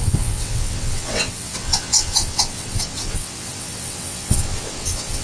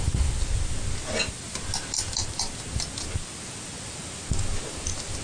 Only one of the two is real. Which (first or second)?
second